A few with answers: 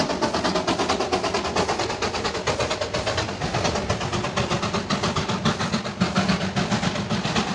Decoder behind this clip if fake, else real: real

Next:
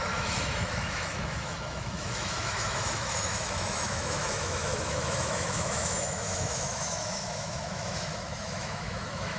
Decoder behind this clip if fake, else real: fake, autoencoder, DAC-VAE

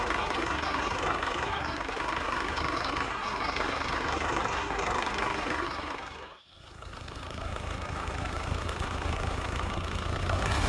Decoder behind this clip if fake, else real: fake, codec, SNAC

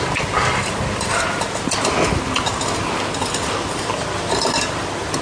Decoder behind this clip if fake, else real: real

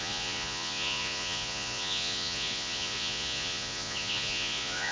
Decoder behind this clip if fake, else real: fake, vocoder, Vocos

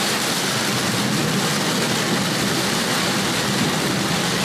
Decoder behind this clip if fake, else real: real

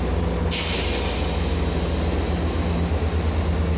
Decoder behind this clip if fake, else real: real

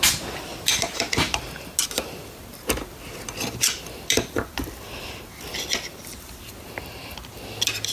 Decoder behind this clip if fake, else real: real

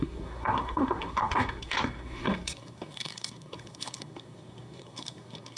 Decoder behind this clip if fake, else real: fake, codec, SNAC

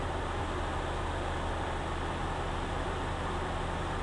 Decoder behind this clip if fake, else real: real